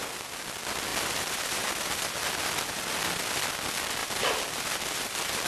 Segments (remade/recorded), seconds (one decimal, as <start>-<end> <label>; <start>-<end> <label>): 0.0-0.9 recorded; 0.9-2.2 remade; 2.2-4.0 recorded; 4.0-5.5 remade